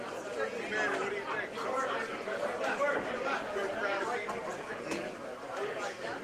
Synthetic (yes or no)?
no